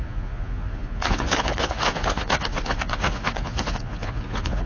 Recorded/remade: remade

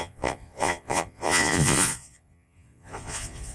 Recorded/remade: remade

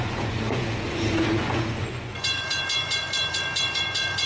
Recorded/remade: remade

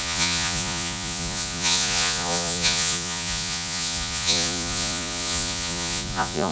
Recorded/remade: remade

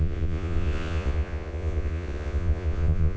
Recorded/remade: remade